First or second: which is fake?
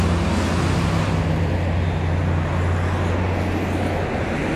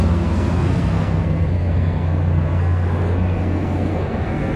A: second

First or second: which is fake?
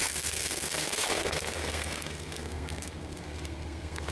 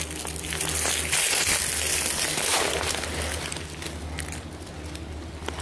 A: first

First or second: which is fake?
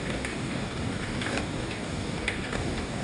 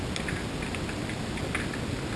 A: first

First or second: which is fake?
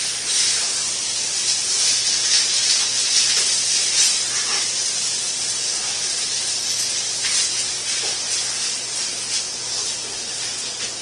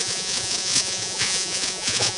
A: second